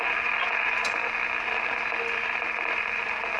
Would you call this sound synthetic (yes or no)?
no